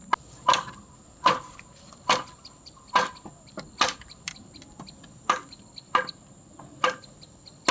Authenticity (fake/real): real